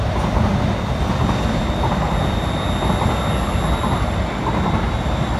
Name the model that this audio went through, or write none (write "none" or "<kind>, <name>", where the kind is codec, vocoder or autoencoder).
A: none